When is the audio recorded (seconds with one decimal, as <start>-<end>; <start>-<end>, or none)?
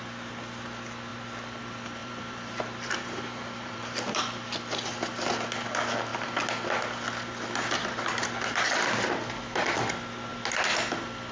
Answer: 0.0-2.0; 4.2-11.3